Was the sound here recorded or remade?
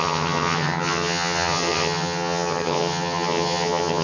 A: remade